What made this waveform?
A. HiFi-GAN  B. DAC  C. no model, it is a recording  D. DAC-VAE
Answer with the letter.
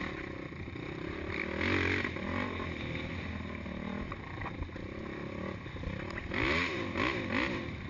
C